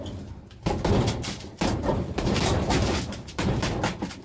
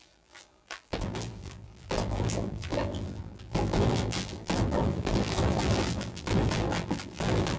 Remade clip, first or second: second